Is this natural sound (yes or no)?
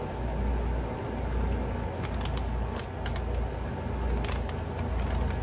yes